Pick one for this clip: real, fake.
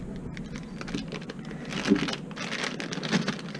real